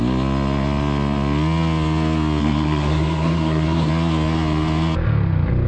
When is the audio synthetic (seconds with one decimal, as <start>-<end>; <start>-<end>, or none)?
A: 2.4-3.9